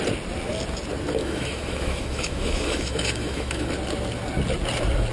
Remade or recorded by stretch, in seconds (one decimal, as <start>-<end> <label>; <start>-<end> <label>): 0.0-1.2 recorded; 1.2-3.7 remade; 3.7-5.1 recorded